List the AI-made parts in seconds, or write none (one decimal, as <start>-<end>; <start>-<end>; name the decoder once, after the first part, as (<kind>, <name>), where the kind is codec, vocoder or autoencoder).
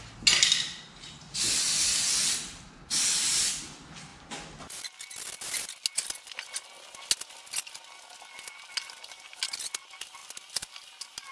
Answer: none